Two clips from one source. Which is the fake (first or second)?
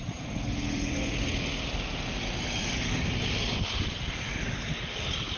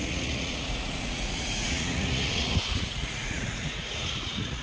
second